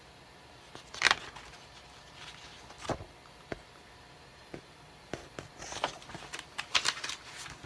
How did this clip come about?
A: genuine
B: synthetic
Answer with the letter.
A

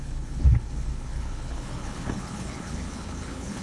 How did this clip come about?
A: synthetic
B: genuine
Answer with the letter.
A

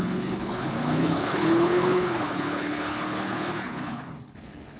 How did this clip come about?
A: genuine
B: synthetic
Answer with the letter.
B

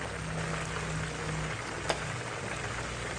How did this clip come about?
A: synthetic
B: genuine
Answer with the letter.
B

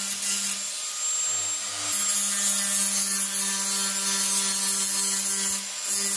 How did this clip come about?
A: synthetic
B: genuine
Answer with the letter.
B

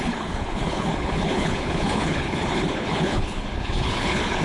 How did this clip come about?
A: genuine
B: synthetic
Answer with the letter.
B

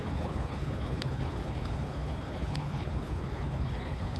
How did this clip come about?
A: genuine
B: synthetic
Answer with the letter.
B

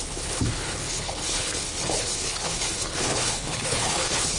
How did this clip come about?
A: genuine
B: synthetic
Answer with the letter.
B